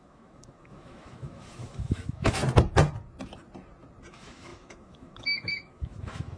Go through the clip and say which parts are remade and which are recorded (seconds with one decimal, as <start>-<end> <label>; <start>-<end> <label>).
0.0-2.4 remade; 2.4-4.1 recorded; 4.1-6.4 remade